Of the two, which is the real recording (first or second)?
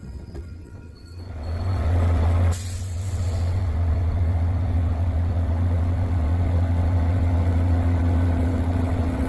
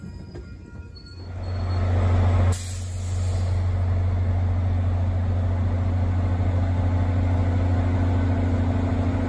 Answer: second